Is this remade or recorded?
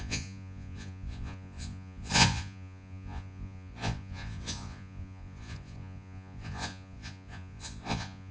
remade